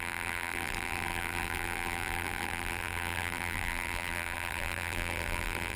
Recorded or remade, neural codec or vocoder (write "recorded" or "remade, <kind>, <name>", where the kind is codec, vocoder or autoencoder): remade, vocoder, BigVGAN v2